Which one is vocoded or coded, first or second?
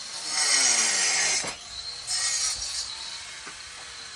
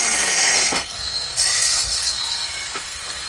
second